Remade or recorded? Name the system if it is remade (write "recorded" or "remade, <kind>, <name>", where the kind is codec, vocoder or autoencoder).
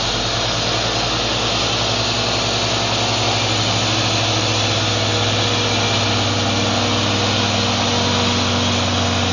recorded